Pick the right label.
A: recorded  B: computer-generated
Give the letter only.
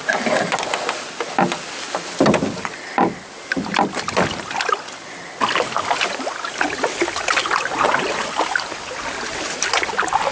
A